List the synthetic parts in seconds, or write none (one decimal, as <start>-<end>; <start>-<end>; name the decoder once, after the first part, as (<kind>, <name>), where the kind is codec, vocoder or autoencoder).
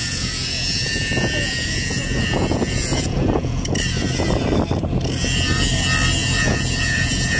0.0-3.8 (vocoder, Vocos); 6.2-7.4